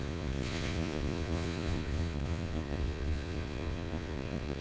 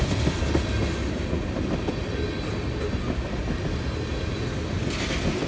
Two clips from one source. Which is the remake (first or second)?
first